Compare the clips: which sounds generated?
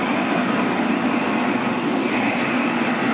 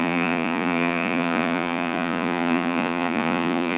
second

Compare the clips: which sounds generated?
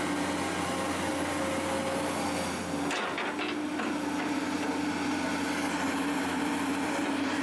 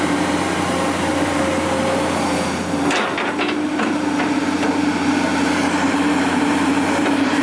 second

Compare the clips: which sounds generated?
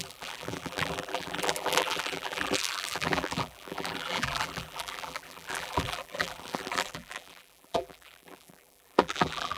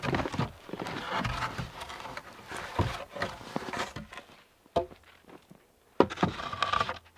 first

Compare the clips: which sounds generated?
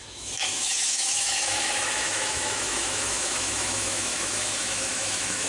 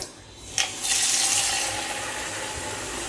first